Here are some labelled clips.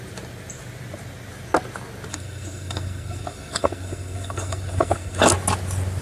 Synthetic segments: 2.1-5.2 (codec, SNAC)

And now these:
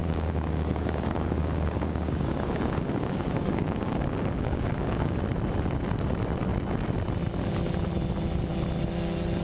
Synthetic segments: 0.0-5.2 (codec, DAC)

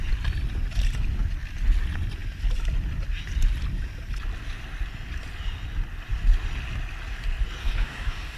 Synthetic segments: 7.6-8.4 (codec, DAC)

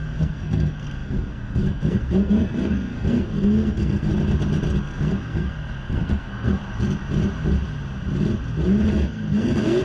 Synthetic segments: 0.0-4.1 (codec, SNAC); 4.8-6.6; 8.9-9.8

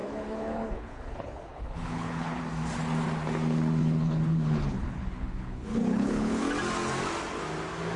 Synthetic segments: 0.0-2.4 (codec, HILCodec); 3.8-6.4